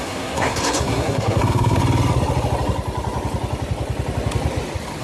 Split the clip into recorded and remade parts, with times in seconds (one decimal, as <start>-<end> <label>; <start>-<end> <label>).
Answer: 0.0-1.8 remade; 1.8-5.0 recorded